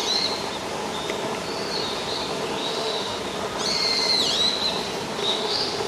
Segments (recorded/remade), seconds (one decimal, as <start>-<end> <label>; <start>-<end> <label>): 0.0-2.6 recorded; 2.6-3.2 remade; 3.2-5.2 recorded; 5.2-5.9 remade